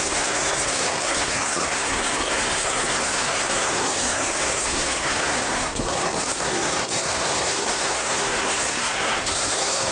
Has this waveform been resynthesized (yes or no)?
yes